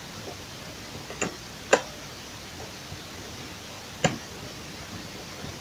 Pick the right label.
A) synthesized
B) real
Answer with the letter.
B